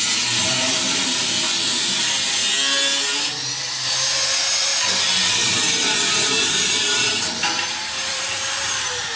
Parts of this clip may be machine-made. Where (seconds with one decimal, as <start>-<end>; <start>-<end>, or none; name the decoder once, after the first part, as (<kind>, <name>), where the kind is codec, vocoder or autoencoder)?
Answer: 0.0-2.4 (vocoder, BigVGAN v2); 3.2-4.7; 5.5-9.2